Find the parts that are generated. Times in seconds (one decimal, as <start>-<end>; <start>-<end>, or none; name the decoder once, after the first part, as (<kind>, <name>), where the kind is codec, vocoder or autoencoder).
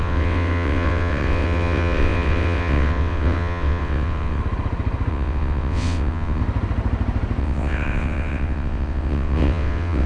0.0-4.4 (vocoder, WaveNeXt); 5.1-6.4; 7.4-10.1